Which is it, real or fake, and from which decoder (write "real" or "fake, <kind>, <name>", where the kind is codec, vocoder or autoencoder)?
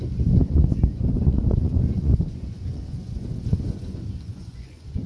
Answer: fake, vocoder, Vocos